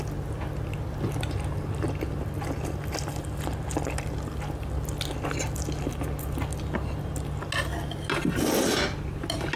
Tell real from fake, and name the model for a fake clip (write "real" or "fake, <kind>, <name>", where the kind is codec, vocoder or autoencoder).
real